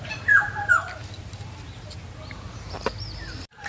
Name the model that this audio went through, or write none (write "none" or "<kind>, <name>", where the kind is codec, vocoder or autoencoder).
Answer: none